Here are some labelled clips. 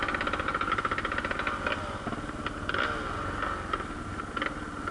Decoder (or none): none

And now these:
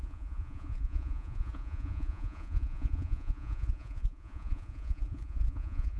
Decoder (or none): vocoder, Vocos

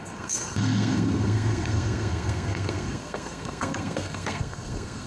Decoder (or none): codec, SNAC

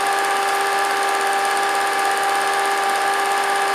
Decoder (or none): none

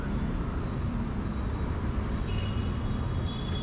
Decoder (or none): none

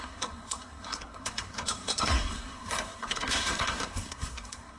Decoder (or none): codec, SNAC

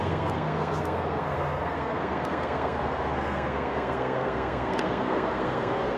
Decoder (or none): codec, SNAC